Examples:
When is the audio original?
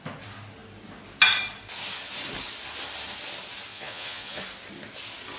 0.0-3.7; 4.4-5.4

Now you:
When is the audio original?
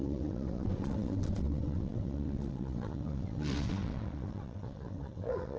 none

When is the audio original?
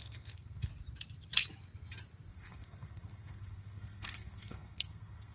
0.7-2.3